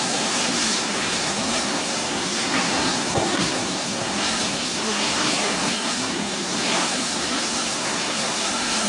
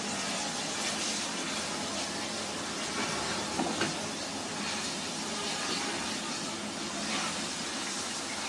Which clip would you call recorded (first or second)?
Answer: second